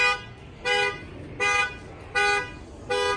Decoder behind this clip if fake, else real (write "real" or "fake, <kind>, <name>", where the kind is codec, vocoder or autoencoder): real